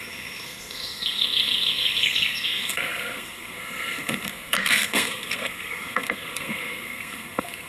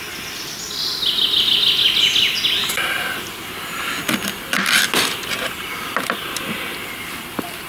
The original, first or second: second